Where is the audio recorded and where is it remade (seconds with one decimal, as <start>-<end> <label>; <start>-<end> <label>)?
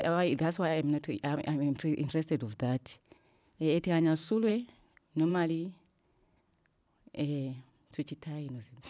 0.0-3.4 recorded; 3.4-4.5 remade; 4.5-8.9 recorded